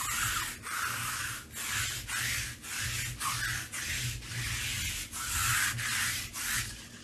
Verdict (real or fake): real